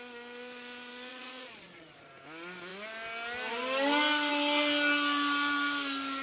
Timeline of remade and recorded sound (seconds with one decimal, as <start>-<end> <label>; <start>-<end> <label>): 0.0-1.1 recorded; 1.1-2.1 remade; 2.1-6.2 recorded